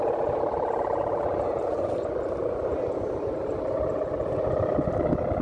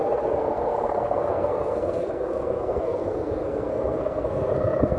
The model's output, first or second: second